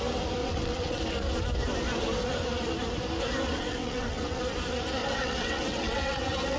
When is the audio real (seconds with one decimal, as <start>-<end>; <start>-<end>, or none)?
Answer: 0.0-0.4; 1.0-3.5; 4.4-5.0